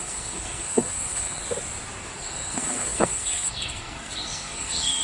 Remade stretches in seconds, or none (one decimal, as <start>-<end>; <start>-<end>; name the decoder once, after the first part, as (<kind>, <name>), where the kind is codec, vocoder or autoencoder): 0.0-1.4 (codec, SNAC); 2.2-5.0